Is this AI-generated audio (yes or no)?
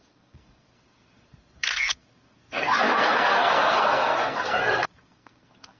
yes